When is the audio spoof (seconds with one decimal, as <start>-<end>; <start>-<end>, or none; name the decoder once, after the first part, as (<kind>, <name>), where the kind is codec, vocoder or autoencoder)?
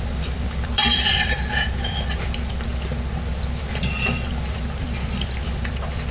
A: 0.0-2.7 (vocoder, BigVGAN v2); 3.6-6.1